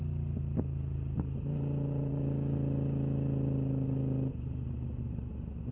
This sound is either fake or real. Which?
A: real